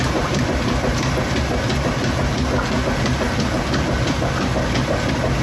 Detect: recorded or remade recorded